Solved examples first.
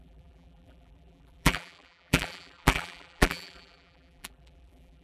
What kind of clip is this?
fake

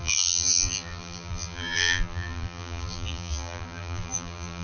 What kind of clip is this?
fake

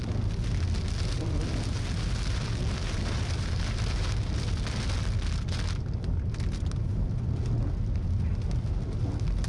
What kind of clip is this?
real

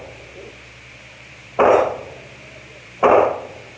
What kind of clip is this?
fake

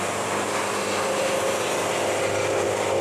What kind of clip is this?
real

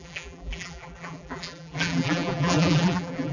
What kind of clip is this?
fake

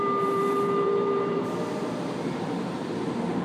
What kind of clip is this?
fake